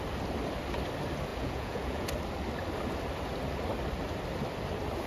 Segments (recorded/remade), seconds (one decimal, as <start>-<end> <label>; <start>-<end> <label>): 0.0-1.3 recorded; 1.3-2.1 remade; 2.1-5.1 recorded